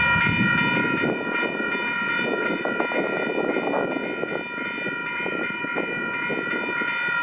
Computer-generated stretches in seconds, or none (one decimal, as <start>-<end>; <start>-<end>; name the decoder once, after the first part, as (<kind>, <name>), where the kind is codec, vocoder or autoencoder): 0.8-2.6 (vocoder, BigVGAN v2); 5.0-5.6